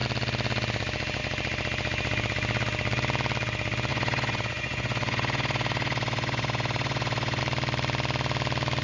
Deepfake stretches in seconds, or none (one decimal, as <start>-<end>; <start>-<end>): 3.9-7.4